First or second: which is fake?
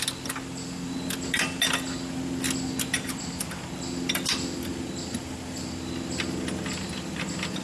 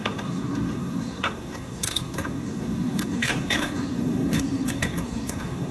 second